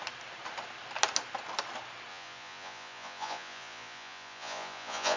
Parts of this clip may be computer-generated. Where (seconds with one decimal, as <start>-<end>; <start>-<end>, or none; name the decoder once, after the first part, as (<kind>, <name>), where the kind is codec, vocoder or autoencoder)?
2.1-5.2 (vocoder, Vocos)